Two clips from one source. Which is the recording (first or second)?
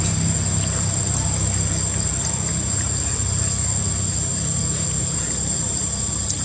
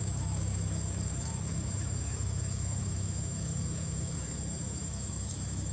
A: first